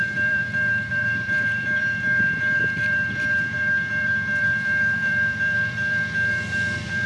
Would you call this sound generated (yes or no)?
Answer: yes